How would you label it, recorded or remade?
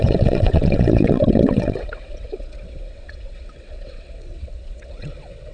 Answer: remade